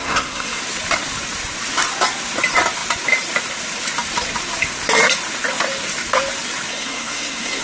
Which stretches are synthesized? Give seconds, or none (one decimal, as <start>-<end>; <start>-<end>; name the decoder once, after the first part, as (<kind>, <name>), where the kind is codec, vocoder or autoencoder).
0.0-0.6 (codec, SNAC); 6.7-7.6